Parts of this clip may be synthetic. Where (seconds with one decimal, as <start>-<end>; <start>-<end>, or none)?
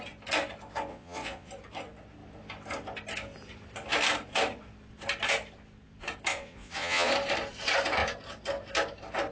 0.9-1.5; 6.3-7.1